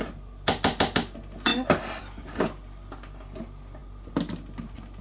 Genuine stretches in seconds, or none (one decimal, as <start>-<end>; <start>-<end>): 0.0-5.0